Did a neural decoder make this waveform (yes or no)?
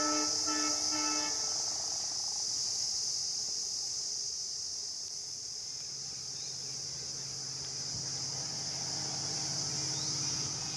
no